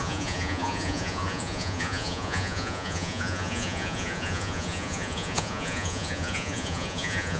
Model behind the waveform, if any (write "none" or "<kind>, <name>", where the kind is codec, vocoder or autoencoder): vocoder, Vocos